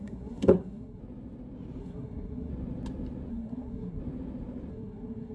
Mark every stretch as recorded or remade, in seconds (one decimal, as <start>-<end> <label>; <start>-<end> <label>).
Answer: 0.0-1.0 remade; 1.0-1.8 recorded; 1.8-2.5 remade; 2.5-3.3 recorded; 3.3-4.0 remade; 4.0-4.7 recorded; 4.7-5.3 remade